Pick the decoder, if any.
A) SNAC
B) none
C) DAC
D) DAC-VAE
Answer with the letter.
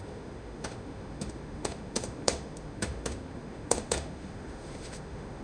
D